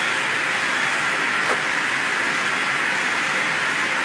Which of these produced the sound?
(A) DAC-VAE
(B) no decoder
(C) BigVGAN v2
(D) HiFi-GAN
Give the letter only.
B